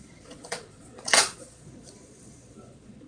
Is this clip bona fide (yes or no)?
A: no